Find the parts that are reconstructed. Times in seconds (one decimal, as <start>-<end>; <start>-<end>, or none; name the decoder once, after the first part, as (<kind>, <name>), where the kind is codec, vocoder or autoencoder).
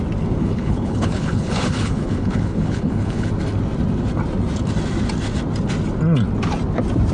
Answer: 0.4-3.3 (codec, HILCodec)